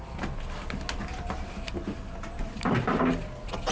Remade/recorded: recorded